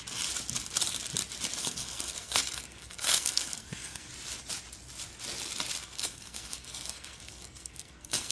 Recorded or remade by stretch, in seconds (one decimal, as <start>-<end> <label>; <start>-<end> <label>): 0.0-1.6 recorded; 1.6-4.1 remade; 4.1-5.8 recorded; 5.8-8.3 remade